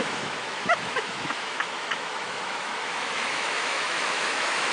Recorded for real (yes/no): no